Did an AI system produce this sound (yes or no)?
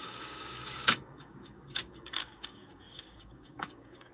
yes